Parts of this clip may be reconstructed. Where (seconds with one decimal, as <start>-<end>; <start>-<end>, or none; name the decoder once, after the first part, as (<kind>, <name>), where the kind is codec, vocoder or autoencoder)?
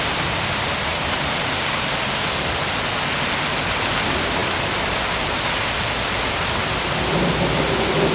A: none